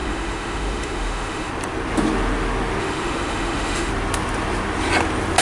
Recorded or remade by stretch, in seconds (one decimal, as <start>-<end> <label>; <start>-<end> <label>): 0.0-1.5 remade; 1.5-2.8 recorded; 2.8-3.9 remade; 3.9-5.4 recorded